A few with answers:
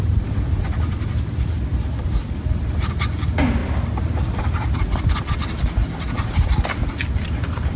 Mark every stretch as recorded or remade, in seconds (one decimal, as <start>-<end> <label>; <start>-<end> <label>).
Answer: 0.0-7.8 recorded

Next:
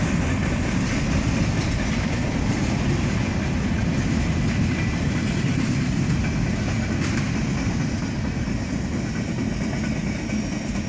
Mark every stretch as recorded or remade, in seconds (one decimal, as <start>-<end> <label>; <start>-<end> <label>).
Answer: 0.0-4.9 recorded; 4.9-5.7 remade; 5.7-10.9 recorded

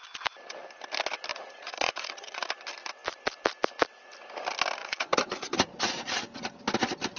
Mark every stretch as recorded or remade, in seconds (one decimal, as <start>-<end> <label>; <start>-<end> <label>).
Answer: 0.0-1.3 recorded; 1.3-2.4 remade; 2.4-4.8 recorded; 4.8-6.2 remade; 6.2-7.2 recorded

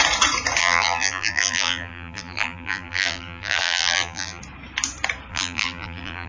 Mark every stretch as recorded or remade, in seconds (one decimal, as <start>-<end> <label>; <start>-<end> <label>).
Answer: 0.0-0.6 recorded; 0.6-4.4 remade; 4.4-5.3 recorded; 5.3-6.3 remade

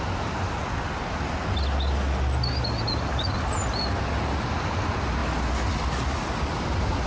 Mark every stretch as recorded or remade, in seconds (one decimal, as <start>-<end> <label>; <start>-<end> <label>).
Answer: 0.0-7.1 recorded